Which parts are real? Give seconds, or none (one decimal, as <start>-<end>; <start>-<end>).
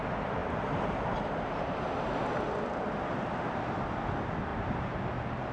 0.0-0.4; 2.2-4.5; 5.0-5.5